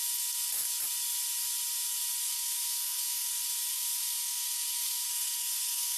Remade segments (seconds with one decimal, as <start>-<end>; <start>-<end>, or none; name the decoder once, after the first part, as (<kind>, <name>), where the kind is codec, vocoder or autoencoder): 2.2-3.3 (codec, SNAC); 3.7-6.0